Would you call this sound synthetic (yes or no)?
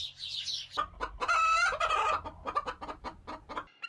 no